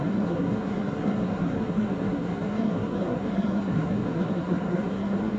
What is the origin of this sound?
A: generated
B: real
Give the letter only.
A